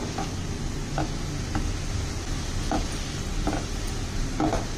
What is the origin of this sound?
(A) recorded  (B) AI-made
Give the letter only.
A